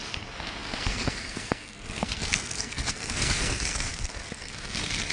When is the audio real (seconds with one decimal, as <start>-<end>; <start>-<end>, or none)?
none